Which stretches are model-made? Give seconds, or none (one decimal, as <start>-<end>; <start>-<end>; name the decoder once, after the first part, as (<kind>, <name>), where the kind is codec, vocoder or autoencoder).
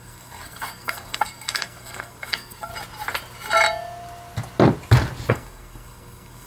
0.0-2.7 (codec, SNAC); 5.3-6.5